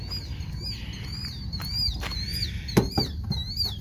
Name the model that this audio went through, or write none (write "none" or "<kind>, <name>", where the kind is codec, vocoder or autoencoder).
none